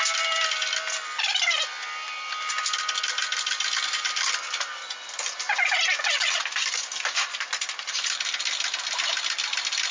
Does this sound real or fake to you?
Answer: real